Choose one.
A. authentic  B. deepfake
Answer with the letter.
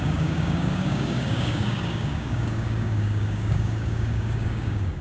B